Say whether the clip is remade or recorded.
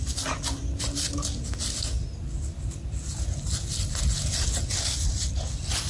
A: recorded